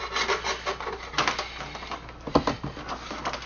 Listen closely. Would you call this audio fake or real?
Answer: real